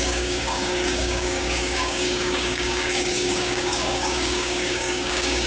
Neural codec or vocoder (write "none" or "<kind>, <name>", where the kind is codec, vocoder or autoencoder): codec, DAC